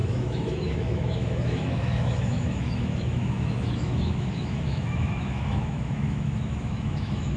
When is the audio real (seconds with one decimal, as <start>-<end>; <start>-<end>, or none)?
none